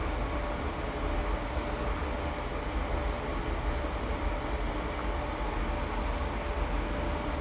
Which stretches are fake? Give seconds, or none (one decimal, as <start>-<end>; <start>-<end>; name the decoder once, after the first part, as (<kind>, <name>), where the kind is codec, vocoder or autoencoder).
none